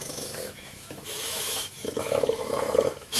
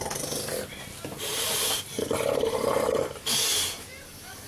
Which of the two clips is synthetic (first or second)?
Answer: first